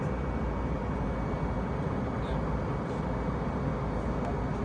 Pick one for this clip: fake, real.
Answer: real